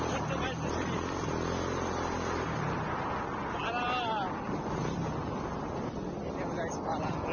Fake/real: real